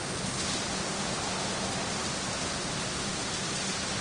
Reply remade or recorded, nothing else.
recorded